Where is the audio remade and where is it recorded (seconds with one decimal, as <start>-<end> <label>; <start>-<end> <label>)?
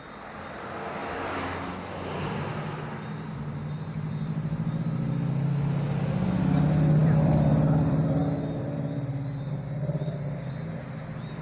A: 0.0-7.0 recorded; 7.0-8.2 remade; 8.2-11.4 recorded